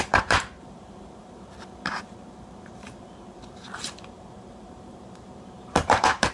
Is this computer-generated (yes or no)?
yes